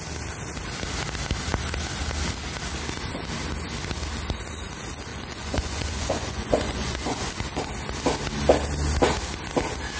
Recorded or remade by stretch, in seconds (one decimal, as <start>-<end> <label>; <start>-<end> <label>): 0.0-5.1 recorded; 5.1-7.3 remade; 7.3-10.0 recorded